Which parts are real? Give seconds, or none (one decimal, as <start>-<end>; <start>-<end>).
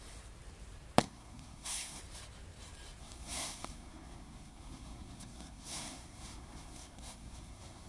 0.0-1.0; 2.0-3.0